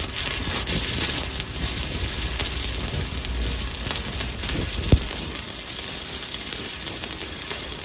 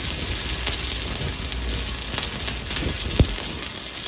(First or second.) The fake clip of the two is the first